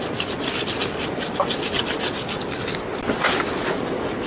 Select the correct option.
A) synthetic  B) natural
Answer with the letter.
B